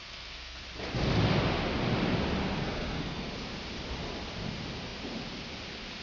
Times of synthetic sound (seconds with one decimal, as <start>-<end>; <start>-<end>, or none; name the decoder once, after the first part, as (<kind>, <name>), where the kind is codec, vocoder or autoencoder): 0.0-0.6 (codec, SNAC); 2.4-3.3